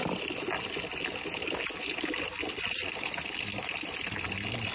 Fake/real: real